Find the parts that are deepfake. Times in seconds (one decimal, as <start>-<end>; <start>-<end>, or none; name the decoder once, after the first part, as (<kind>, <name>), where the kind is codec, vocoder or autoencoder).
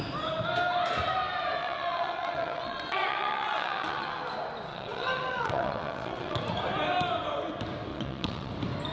1.6-4.2 (vocoder, WaveNeXt); 4.7-6.4; 7.9-8.5